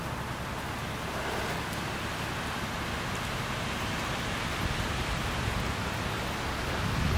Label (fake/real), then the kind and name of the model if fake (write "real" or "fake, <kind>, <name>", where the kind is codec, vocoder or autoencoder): real